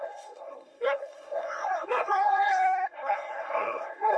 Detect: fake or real fake